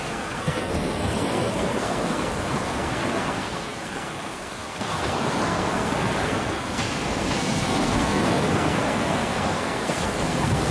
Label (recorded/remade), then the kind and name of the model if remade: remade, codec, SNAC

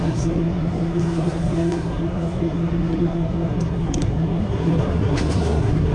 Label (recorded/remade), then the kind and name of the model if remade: remade, codec, SNAC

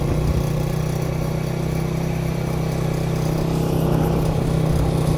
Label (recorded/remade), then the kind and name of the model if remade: recorded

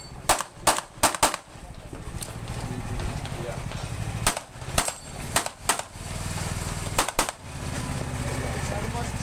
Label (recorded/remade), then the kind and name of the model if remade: recorded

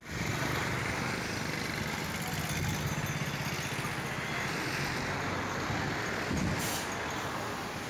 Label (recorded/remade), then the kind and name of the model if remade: recorded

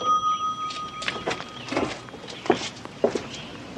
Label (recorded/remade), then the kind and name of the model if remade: recorded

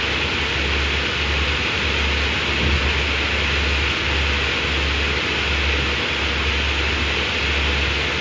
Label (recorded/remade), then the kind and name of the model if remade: recorded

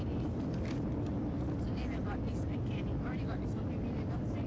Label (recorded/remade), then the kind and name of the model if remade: recorded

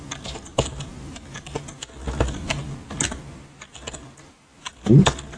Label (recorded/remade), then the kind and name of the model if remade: recorded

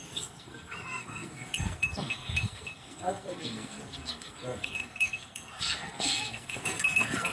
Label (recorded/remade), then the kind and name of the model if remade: remade, codec, SNAC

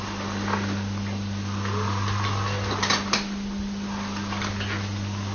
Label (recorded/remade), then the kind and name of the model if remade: recorded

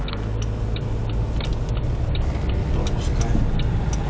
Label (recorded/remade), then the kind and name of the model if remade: recorded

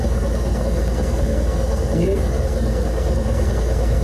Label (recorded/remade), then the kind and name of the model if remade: remade, codec, SNAC